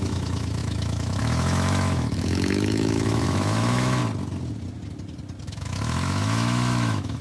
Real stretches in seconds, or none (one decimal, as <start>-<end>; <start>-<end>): 4.0-5.4